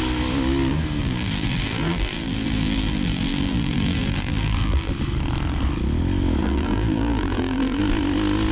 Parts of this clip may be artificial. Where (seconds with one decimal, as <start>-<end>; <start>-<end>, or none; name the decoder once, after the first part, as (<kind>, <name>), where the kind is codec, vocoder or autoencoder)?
1.0-4.9 (vocoder, BigVGAN v2); 6.4-7.8